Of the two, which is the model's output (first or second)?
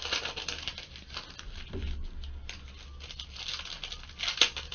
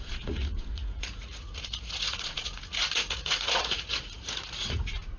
second